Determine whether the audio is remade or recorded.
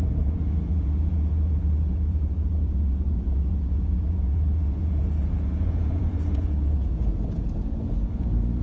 remade